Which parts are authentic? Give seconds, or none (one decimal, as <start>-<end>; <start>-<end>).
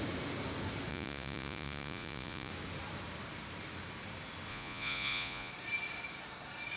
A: 0.0-0.9; 2.5-4.5; 5.5-6.8